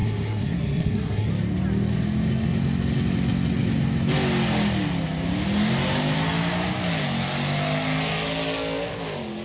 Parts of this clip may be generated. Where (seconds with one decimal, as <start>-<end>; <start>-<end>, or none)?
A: 0.0-1.3